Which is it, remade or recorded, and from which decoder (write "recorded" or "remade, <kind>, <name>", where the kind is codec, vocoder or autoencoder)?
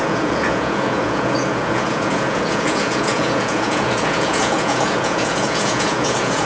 remade, vocoder, Vocos